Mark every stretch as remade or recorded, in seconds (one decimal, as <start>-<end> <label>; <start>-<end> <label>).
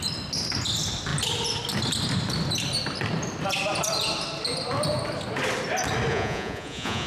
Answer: 0.0-6.1 recorded; 6.1-7.1 remade